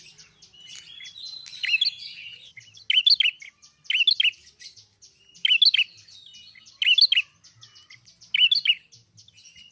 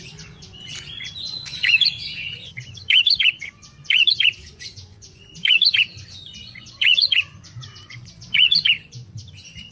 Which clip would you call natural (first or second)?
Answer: first